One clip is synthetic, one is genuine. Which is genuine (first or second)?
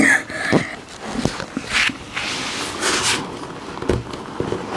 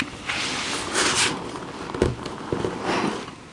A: first